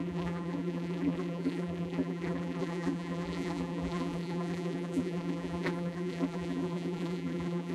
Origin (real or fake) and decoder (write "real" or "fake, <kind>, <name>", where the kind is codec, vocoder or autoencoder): fake, vocoder, BigVGAN v2